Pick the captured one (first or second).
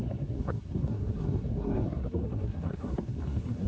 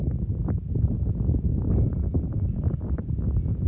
second